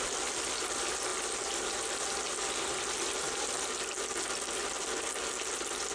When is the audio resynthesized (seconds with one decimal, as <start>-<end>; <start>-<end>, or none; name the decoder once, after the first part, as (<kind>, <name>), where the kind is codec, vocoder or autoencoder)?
none